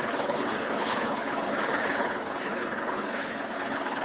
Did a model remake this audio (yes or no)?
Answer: yes